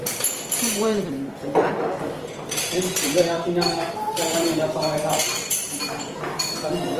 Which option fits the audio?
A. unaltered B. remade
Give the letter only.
B